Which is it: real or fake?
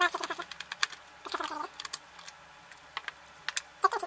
real